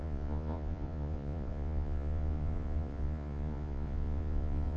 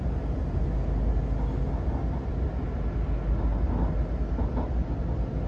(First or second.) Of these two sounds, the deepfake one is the first